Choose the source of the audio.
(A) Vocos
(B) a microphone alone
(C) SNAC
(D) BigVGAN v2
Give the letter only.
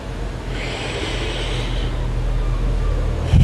B